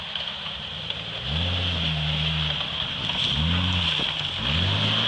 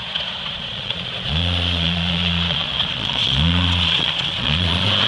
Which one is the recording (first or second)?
first